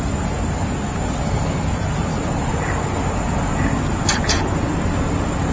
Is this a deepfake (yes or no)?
no